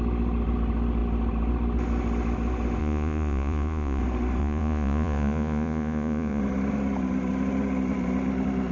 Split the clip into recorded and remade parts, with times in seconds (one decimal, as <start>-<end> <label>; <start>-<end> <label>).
0.0-2.8 recorded; 2.8-4.0 remade; 4.0-4.4 recorded; 4.4-6.4 remade; 6.4-8.7 recorded